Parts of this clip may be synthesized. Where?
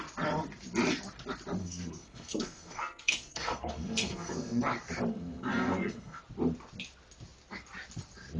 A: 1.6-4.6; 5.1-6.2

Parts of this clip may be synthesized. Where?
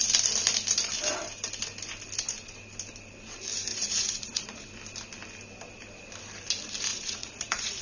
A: 3.7-4.7; 6.9-7.8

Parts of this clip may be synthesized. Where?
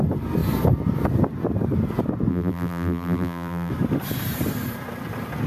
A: 2.3-3.7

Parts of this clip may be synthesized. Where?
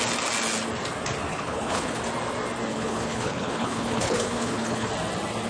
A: 1.3-2.0; 2.7-4.9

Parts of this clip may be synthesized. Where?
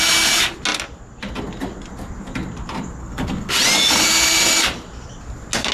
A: 3.0-3.5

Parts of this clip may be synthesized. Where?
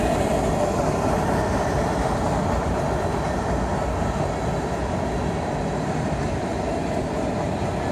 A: 0.0-1.9; 4.8-7.5